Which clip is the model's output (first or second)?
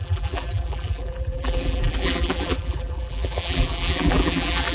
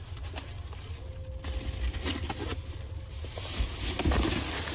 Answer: first